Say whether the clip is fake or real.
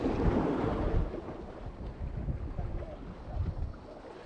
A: real